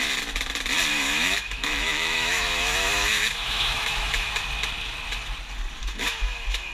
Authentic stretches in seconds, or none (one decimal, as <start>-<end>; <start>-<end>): 0.0-0.9; 4.3-5.8